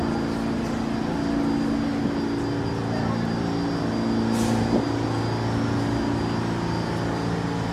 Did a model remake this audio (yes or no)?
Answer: no